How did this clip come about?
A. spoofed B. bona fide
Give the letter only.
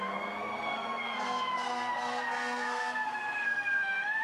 A